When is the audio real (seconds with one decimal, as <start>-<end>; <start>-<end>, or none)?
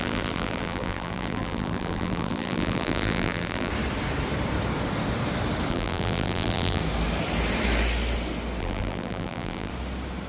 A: 3.7-5.7; 6.8-8.6; 9.7-10.3